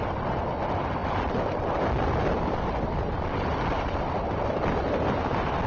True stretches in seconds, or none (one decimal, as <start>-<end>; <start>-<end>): 0.0-1.0; 4.2-5.7